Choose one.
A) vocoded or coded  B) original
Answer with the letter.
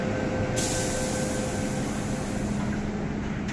B